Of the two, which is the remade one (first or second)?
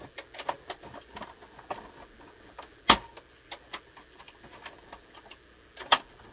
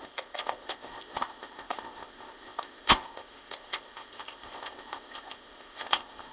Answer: second